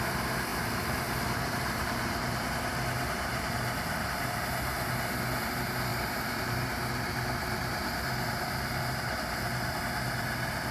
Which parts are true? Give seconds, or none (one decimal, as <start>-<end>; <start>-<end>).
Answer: 0.0-0.5; 2.4-3.3; 4.4-5.9; 9.8-10.7